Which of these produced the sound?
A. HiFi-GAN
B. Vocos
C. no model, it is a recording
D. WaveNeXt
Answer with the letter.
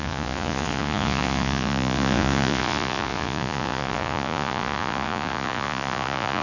B